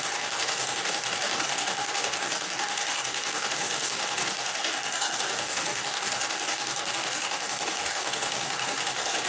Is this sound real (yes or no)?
no